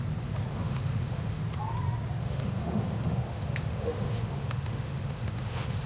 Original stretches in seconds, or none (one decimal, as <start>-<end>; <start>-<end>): 0.0-0.5; 1.4-2.2